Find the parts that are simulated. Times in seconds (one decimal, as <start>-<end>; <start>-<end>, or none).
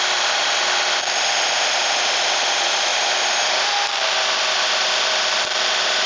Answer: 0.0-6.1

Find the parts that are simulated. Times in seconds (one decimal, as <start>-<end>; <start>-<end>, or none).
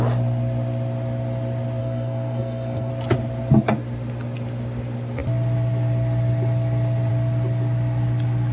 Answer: 1.8-2.9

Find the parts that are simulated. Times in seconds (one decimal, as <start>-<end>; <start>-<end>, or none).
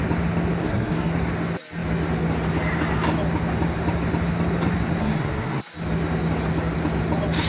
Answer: 0.6-1.1; 5.0-5.6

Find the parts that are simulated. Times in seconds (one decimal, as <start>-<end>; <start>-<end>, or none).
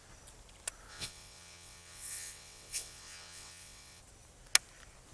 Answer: 0.9-4.0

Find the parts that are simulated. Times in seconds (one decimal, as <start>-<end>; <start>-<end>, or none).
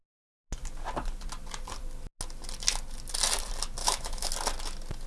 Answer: 3.8-4.3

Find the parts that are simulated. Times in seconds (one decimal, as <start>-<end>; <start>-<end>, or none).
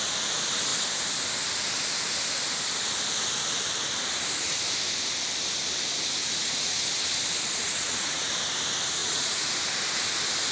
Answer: 6.2-6.8; 7.6-8.3; 9.0-9.6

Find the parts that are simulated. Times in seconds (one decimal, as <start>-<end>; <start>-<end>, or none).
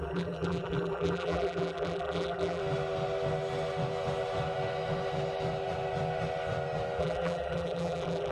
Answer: 0.0-2.6; 7.0-8.3